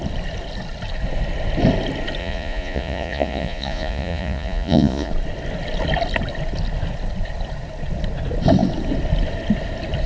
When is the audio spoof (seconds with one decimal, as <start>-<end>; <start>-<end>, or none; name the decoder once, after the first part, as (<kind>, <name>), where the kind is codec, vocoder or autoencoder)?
2.2-5.1 (vocoder, Vocos)